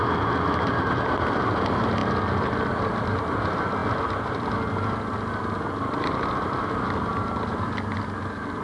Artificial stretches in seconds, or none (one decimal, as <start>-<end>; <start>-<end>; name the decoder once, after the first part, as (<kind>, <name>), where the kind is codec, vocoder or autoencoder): none